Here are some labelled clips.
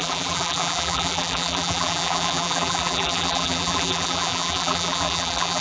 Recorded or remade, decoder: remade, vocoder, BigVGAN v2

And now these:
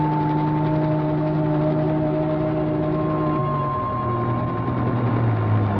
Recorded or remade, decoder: recorded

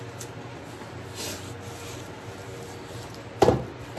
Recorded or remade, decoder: recorded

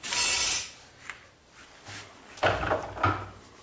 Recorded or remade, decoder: recorded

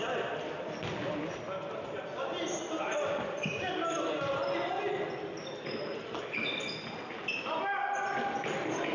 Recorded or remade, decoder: recorded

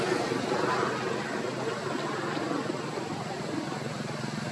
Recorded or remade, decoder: recorded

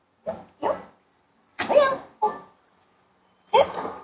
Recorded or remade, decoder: recorded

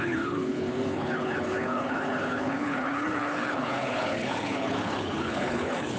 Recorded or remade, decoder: remade, codec, HILCodec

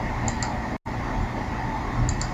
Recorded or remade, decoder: recorded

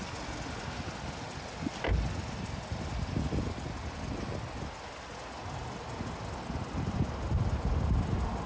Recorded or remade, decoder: recorded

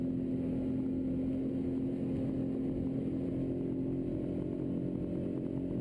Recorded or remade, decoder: recorded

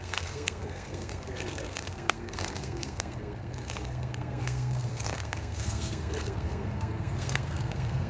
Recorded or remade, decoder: remade, codec, SNAC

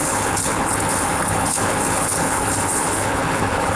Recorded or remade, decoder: remade, codec, HILCodec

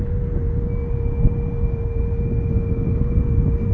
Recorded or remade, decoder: recorded